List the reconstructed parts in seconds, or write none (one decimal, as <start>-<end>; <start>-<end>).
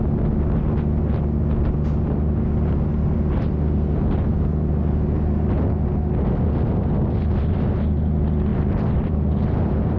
8.5-10.0